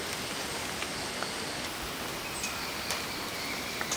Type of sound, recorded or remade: recorded